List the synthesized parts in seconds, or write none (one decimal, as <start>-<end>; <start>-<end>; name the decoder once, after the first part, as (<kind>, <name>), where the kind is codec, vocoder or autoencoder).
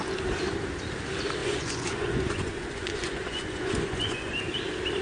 1.4-4.4 (vocoder, Vocos)